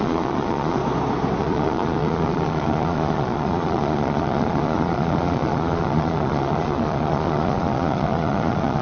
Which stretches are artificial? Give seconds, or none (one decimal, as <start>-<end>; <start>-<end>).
0.0-0.8; 1.4-8.8